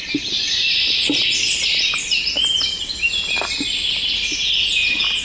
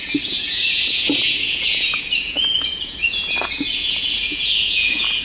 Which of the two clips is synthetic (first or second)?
second